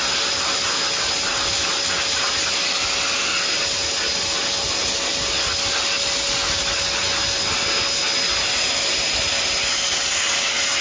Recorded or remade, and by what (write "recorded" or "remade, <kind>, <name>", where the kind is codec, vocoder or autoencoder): recorded